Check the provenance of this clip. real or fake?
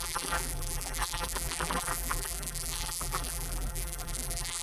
fake